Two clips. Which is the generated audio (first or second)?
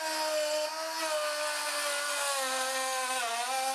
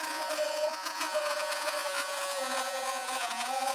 second